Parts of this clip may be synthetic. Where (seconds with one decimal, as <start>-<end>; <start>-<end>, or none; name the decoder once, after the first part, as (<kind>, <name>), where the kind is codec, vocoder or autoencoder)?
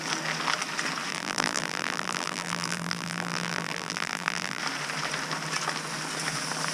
1.1-4.6 (vocoder, BigVGAN v2)